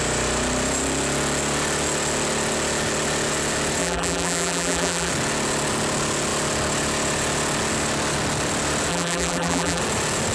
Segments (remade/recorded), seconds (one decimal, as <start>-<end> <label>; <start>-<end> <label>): 0.0-3.8 recorded; 3.8-5.1 remade; 5.1-8.9 recorded; 8.9-9.8 remade; 9.8-10.3 recorded